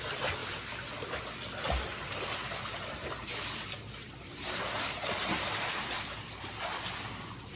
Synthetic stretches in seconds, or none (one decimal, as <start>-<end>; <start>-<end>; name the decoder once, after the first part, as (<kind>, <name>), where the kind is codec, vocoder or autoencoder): none